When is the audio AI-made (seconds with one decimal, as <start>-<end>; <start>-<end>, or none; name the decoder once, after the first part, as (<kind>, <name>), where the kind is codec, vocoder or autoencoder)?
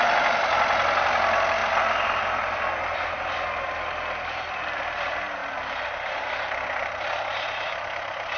none